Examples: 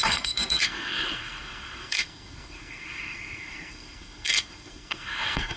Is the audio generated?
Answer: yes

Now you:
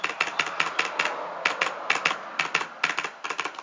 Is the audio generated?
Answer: no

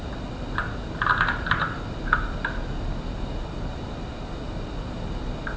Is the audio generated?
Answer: no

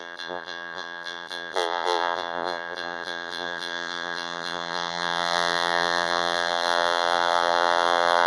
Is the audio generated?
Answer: yes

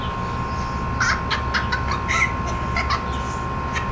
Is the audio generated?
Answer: no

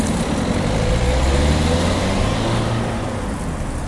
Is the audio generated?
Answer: no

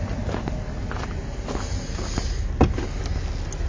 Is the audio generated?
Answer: no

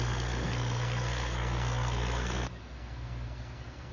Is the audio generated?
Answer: yes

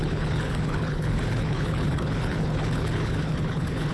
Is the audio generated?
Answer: yes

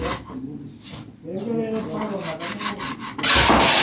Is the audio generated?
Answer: no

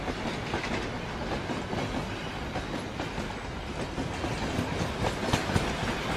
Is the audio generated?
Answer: no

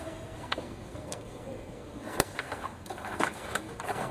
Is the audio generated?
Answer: yes